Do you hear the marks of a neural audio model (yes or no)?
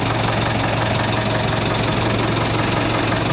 no